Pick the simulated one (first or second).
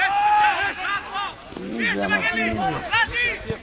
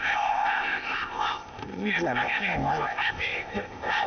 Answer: second